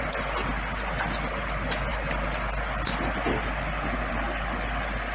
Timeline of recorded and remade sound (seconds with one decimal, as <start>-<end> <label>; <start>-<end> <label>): 0.0-5.1 recorded